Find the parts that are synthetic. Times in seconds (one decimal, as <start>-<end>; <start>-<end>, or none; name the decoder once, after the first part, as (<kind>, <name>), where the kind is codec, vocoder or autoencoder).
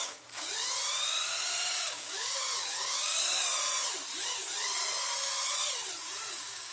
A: 0.0-0.5 (codec, DAC); 1.7-3.1; 6.3-6.7